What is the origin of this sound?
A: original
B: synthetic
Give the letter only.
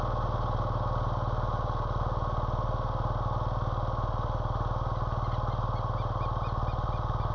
A